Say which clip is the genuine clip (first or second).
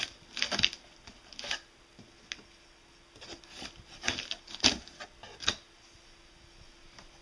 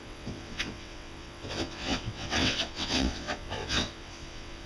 first